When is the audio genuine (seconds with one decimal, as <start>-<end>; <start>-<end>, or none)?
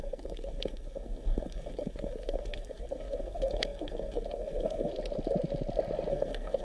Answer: 4.9-6.1